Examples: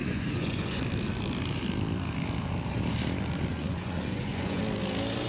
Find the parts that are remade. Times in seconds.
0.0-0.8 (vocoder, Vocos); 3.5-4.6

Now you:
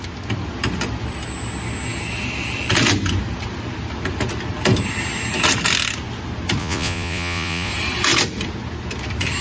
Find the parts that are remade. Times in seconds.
6.6-7.7 (vocoder, Vocos)